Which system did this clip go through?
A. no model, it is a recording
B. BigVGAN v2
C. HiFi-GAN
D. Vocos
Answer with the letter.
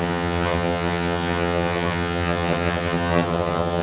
C